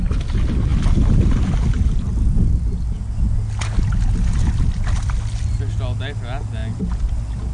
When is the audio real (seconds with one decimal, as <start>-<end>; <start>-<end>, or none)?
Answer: 0.0-7.5